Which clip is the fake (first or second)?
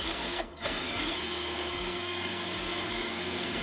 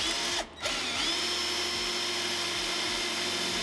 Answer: first